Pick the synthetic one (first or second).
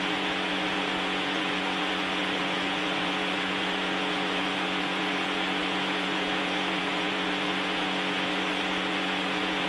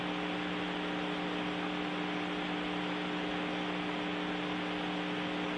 first